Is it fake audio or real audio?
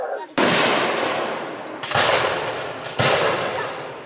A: real